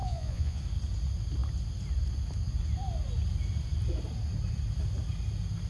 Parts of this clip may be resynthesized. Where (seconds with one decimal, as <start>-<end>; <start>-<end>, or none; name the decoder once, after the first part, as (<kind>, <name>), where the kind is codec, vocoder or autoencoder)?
0.0-0.6 (vocoder, Vocos)